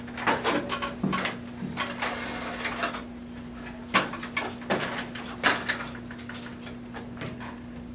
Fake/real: real